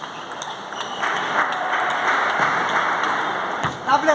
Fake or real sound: real